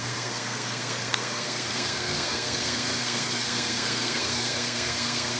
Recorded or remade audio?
remade